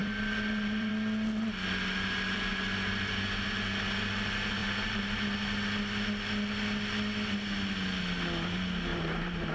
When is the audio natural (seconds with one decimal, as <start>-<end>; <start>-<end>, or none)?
0.9-4.6; 5.2-8.9